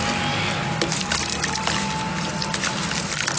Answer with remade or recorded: recorded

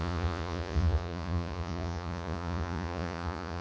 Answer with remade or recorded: remade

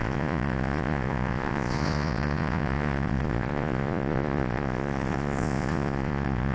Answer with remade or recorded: remade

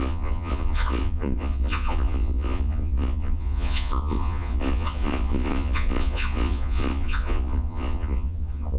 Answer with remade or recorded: remade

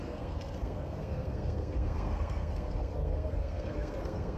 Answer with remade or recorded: remade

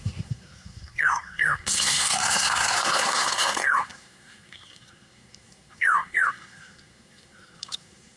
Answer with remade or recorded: remade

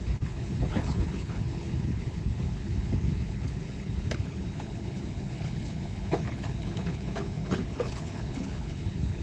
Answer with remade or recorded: remade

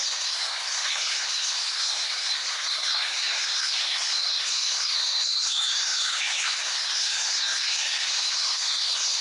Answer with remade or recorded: remade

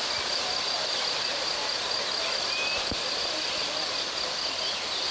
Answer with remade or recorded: recorded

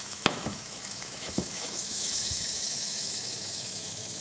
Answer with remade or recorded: remade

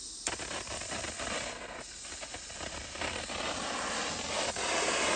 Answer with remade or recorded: recorded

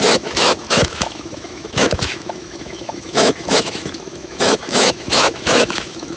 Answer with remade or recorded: remade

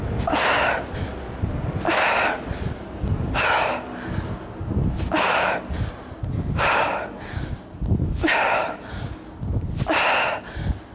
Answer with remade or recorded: recorded